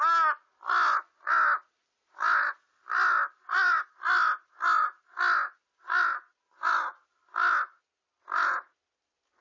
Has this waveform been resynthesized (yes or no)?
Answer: no